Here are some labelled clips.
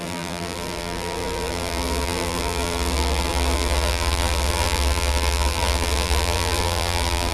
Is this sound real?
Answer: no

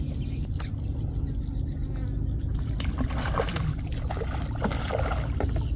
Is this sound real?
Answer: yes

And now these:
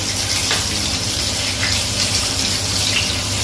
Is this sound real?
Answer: yes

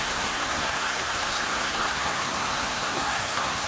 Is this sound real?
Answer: no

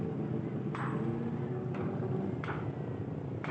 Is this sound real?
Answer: yes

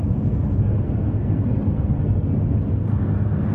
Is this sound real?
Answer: no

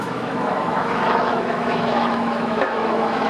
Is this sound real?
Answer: no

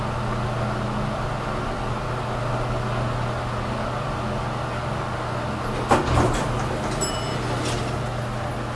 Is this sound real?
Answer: yes